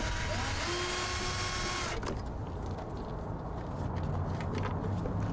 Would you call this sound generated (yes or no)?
no